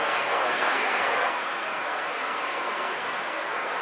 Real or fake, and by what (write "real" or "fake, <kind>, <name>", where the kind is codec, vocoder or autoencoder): fake, codec, SNAC